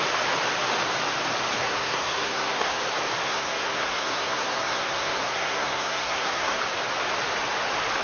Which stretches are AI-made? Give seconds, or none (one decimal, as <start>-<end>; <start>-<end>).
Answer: 1.6-2.8; 3.2-6.6